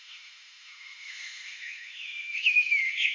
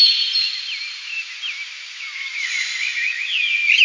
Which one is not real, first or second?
first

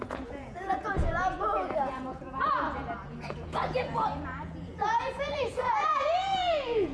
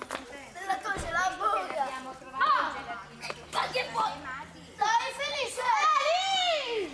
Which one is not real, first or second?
first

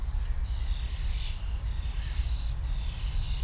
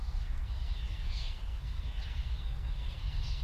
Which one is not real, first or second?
second